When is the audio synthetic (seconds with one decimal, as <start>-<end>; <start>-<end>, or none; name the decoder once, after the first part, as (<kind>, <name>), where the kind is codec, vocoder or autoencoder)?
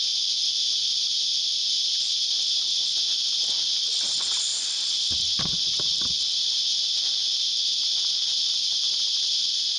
none